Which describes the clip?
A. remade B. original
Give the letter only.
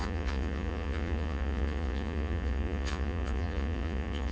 A